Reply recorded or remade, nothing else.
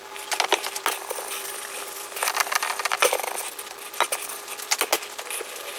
recorded